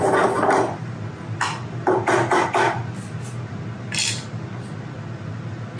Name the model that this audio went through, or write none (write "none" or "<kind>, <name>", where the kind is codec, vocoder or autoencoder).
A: none